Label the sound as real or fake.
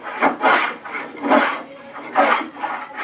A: fake